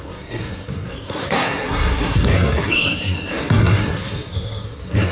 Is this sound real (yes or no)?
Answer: no